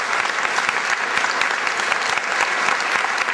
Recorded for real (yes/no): yes